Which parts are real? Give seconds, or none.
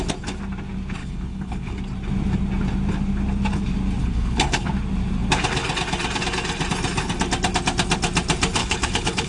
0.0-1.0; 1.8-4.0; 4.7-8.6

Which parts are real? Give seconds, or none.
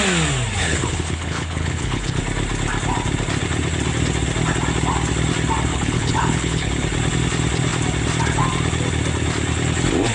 0.0-0.6; 2.2-5.7; 6.7-10.1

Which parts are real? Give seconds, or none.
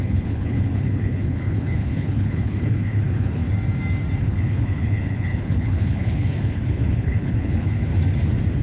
3.4-4.2; 7.9-8.6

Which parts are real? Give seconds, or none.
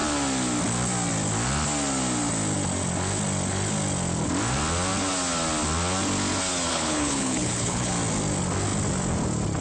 0.0-6.7; 7.9-9.6